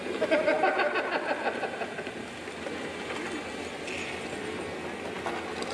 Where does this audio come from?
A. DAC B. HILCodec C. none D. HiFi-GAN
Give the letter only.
C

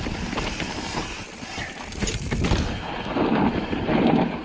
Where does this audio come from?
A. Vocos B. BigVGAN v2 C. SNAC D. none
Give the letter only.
D